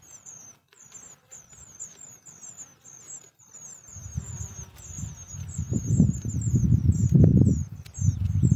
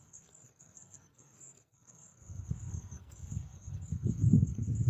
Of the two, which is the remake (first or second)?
second